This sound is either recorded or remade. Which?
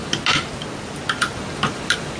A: recorded